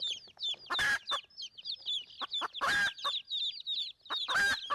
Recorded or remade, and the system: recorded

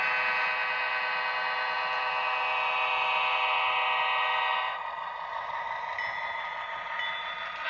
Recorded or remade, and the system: recorded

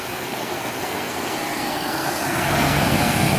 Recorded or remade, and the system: remade, codec, SNAC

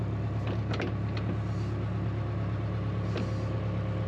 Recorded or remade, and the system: recorded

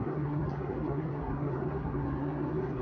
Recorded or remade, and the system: remade, codec, SNAC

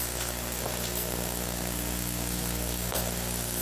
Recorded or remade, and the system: remade, codec, SNAC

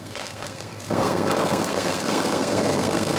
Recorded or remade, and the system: remade, codec, SNAC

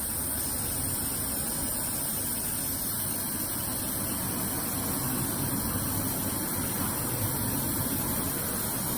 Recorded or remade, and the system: recorded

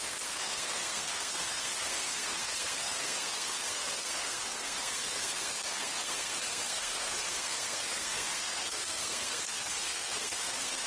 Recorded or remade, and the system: remade, codec, SNAC